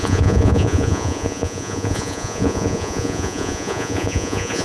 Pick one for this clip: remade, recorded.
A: remade